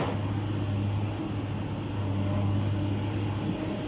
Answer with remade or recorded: recorded